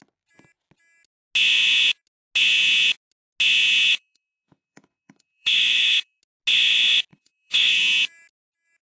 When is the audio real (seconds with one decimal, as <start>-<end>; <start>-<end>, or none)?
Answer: 0.0-3.9; 6.2-7.1; 7.8-8.8